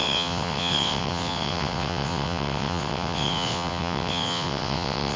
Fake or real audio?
fake